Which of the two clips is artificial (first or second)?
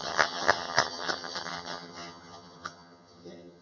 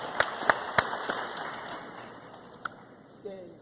first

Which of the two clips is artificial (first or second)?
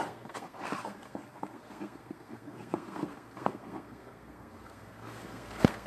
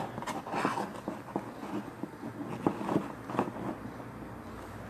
first